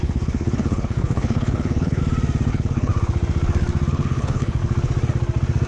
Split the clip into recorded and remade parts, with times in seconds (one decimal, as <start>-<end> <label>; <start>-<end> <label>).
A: 0.0-2.0 remade; 2.0-2.5 recorded; 2.5-2.9 remade; 2.9-3.9 recorded; 3.9-4.6 remade; 4.6-5.7 recorded